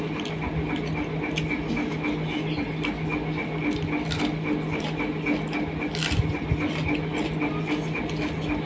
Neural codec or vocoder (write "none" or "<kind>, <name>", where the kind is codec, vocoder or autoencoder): none